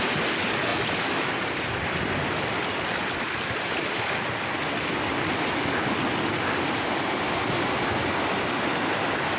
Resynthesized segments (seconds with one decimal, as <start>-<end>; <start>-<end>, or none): none